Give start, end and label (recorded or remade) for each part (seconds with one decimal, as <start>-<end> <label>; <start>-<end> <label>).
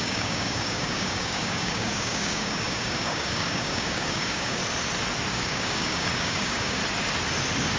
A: 0.0-4.6 remade; 4.6-5.3 recorded; 5.3-6.8 remade; 6.8-7.8 recorded